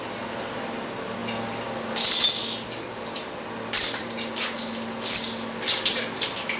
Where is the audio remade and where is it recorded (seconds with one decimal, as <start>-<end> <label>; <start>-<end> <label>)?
0.0-6.6 recorded